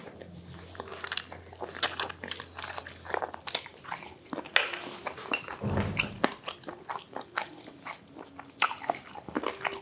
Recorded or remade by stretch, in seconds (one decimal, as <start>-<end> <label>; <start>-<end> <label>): 0.0-0.9 remade; 0.9-2.8 recorded; 2.8-3.7 remade; 3.7-8.1 recorded; 8.1-9.8 remade